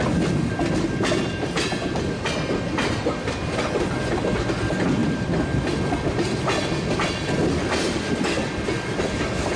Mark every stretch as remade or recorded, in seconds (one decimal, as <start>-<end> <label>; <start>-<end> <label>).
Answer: 0.0-5.0 recorded; 5.0-8.5 remade; 8.5-9.6 recorded